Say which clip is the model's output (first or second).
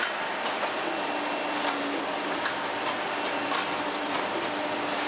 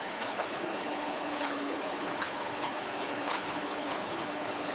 second